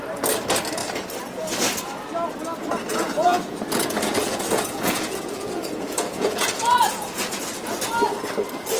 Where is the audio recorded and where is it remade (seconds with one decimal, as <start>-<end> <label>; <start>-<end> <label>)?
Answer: 0.0-2.9 recorded; 2.9-7.4 remade; 7.4-8.8 recorded